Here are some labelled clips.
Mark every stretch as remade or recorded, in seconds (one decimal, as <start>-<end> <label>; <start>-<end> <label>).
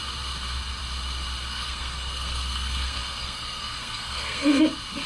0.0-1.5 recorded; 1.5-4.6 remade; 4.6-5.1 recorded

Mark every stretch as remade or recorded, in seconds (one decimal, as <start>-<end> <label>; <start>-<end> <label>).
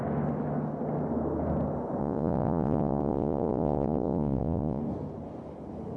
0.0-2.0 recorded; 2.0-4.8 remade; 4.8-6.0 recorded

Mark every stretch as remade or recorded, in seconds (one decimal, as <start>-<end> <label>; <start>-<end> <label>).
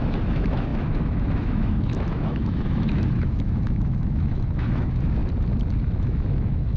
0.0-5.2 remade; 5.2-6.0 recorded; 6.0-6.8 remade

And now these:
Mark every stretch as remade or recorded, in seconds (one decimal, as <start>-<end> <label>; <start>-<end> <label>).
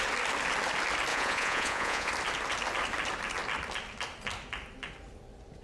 0.0-1.1 recorded; 1.1-2.1 remade; 2.1-5.6 recorded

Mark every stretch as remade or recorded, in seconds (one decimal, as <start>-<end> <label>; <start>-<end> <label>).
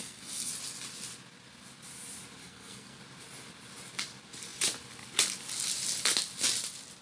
0.0-0.5 remade; 0.5-2.4 recorded; 2.4-3.0 remade; 3.0-7.0 recorded